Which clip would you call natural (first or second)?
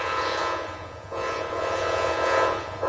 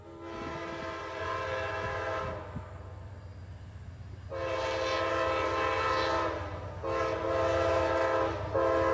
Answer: second